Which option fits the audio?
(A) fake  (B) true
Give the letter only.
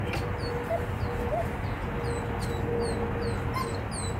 B